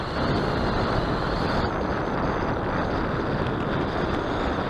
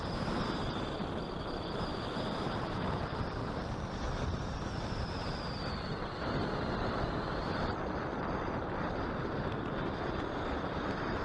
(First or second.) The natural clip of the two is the first